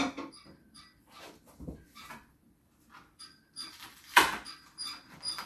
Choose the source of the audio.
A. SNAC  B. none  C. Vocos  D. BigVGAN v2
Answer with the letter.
D